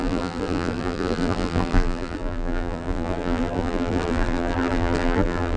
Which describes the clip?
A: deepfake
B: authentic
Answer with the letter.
A